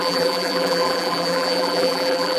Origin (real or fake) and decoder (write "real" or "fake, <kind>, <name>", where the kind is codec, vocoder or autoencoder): fake, vocoder, BigVGAN v2